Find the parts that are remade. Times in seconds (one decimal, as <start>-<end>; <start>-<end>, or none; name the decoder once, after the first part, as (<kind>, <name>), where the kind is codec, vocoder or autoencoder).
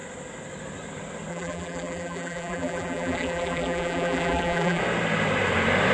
1.3-4.8 (vocoder, BigVGAN v2)